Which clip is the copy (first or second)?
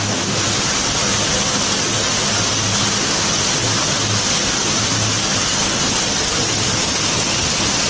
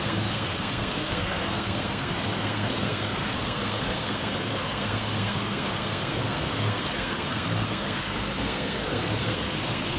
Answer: second